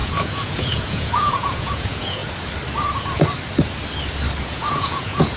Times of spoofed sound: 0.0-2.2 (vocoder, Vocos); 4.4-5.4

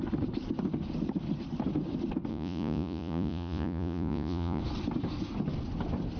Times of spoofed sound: 2.3-4.6 (vocoder, Vocos)

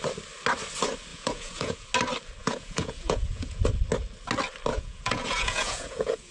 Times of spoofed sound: 1.1-1.9 (vocoder, Vocos); 2.4-3.6; 4.7-6.3

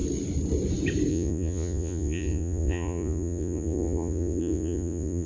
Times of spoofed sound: 1.1-5.3 (vocoder, Vocos)

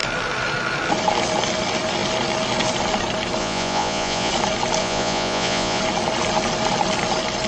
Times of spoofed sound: 3.4-4.3 (vocoder, Vocos); 4.8-5.8

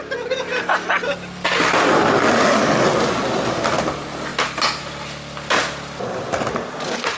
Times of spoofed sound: none